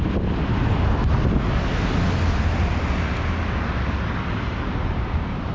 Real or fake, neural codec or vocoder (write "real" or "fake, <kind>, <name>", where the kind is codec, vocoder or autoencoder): real